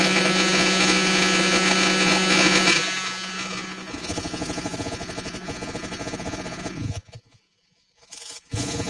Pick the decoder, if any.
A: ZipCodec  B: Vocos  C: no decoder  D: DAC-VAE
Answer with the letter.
B